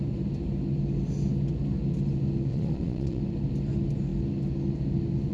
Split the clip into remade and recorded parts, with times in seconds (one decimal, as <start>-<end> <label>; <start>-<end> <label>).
0.0-2.5 recorded; 2.5-3.2 remade; 3.2-5.3 recorded